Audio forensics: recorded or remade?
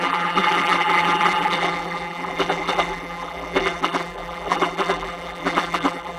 remade